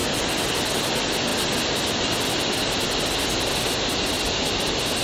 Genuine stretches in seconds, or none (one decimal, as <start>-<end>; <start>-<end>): 0.0-5.0